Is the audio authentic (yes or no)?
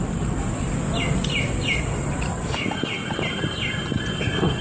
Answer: yes